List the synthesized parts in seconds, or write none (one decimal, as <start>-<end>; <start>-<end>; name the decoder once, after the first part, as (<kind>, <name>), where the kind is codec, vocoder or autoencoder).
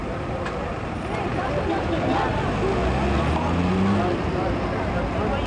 none